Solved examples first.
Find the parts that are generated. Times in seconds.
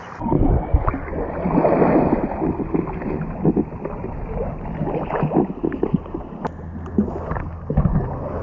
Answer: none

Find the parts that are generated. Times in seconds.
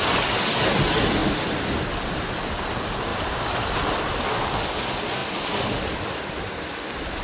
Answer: 3.1-4.1 (vocoder, BigVGAN v2); 5.2-6.2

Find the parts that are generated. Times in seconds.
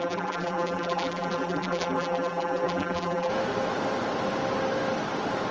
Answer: 0.0-3.3 (vocoder, BigVGAN v2)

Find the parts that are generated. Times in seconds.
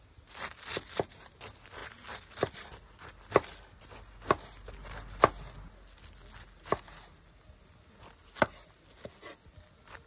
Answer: none